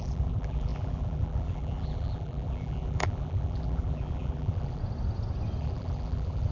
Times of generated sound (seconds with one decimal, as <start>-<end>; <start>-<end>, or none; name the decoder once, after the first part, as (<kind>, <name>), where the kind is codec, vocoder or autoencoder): 0.0-4.8 (vocoder, BigVGAN v2); 5.6-6.5